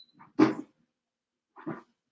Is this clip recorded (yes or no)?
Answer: yes